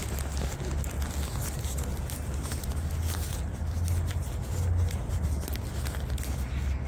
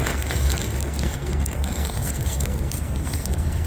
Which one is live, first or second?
first